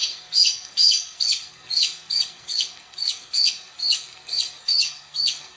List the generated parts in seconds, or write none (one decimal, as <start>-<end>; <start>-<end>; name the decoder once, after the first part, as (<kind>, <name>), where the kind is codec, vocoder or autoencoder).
0.0-5.6 (codec, SNAC)